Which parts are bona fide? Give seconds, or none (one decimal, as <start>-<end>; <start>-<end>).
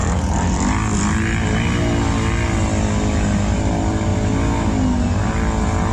0.0-5.9